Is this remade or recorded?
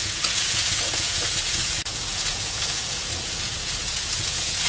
remade